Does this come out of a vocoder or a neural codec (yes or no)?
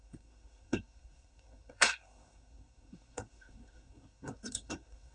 yes